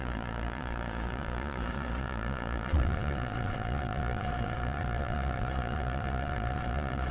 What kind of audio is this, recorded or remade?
remade